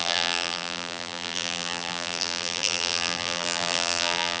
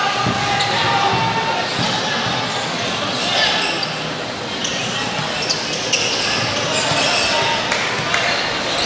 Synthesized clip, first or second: first